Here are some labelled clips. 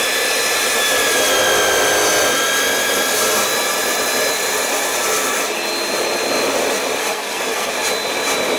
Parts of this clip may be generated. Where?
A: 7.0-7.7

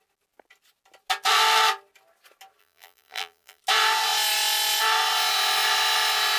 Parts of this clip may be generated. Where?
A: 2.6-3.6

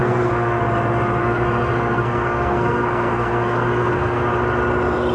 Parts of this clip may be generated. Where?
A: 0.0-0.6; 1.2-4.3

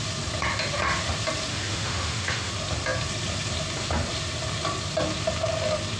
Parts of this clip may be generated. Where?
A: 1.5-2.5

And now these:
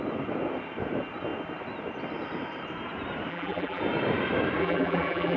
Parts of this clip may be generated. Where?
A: 3.3-3.8; 4.6-5.4